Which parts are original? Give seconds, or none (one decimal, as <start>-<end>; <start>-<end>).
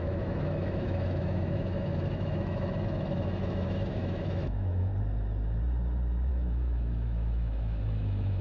4.9-6.3